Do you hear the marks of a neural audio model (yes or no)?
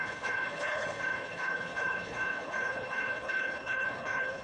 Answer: yes